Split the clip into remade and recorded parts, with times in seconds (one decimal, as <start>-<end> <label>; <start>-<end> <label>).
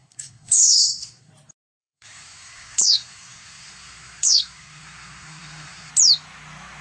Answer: 0.0-1.3 remade; 1.3-1.8 recorded; 1.8-5.9 remade; 5.9-6.8 recorded